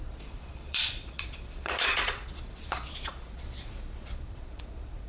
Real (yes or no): no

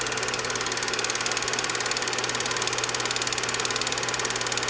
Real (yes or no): yes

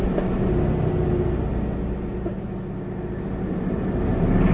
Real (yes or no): yes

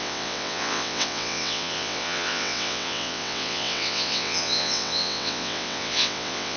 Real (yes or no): no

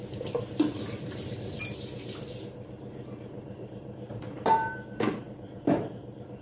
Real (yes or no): no